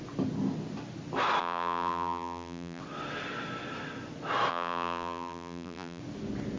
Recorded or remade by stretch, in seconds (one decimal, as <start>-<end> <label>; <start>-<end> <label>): 0.0-1.4 recorded; 1.4-2.8 remade; 2.8-4.5 recorded; 4.5-6.0 remade; 6.0-6.6 recorded